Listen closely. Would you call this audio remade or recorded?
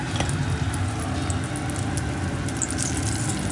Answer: recorded